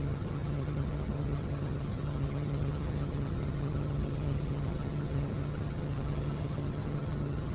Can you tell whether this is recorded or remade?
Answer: remade